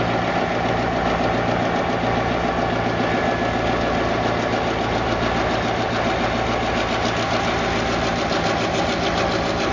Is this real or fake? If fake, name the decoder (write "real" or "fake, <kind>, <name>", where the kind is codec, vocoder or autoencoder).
real